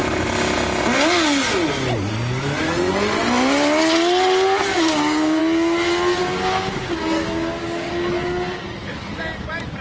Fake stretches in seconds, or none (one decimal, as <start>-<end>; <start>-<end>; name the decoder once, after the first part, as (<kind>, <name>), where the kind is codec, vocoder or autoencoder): 4.7-5.4 (codec, DAC); 6.2-7.9